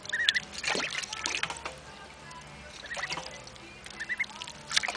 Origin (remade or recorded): recorded